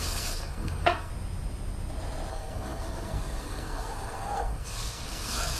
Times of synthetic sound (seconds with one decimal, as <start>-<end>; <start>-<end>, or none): 0.0-1.1; 2.3-5.6